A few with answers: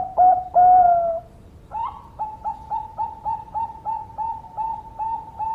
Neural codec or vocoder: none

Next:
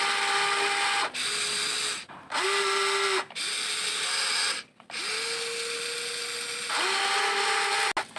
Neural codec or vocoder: none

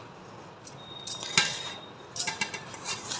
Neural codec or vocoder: none